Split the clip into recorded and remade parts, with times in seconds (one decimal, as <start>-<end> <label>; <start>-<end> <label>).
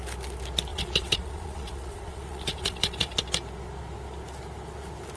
0.0-0.7 recorded; 0.7-3.2 remade; 3.2-5.2 recorded